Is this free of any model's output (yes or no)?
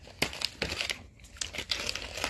yes